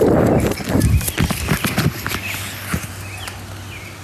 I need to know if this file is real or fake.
real